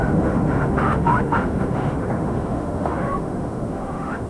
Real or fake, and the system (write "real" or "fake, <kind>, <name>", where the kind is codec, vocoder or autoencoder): fake, autoencoder, DAC-VAE